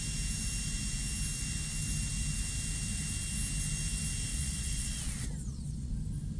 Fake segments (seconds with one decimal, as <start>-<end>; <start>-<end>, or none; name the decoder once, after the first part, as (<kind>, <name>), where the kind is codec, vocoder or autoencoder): 4.3-5.9 (vocoder, Vocos)